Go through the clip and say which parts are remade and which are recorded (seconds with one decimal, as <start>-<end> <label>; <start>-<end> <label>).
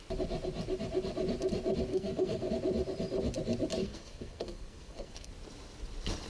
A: 0.0-1.9 recorded; 1.9-2.5 remade; 2.5-3.8 recorded; 3.8-5.3 remade; 5.3-6.3 recorded